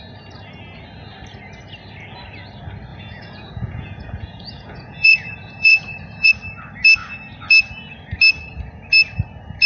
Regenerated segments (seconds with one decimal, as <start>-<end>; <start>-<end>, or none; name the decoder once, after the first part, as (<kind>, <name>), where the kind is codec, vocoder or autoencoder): 2.9-6.3 (vocoder, Vocos)